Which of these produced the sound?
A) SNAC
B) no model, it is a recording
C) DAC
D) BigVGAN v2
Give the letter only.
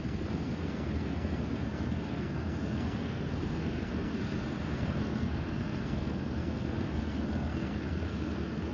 A